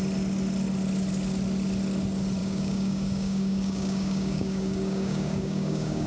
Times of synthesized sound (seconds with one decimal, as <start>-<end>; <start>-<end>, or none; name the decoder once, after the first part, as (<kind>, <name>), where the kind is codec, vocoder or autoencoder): 2.4-6.1 (codec, DAC)